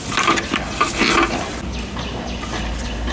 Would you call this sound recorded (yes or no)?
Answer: yes